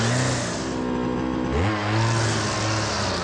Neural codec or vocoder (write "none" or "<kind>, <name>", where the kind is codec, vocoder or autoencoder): none